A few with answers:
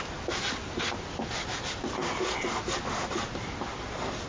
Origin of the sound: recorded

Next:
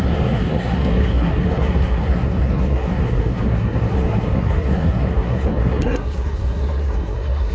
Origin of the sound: remade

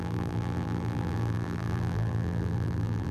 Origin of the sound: remade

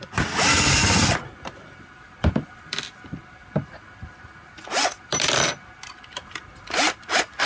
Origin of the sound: recorded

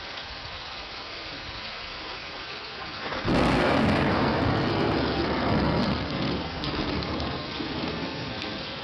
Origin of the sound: remade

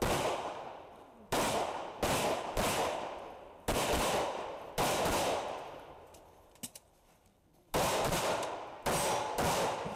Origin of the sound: recorded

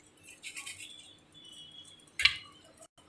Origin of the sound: recorded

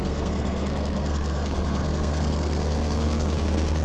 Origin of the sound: remade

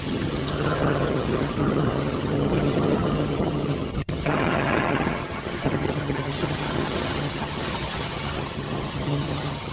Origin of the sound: remade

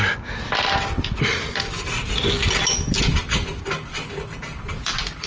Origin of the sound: recorded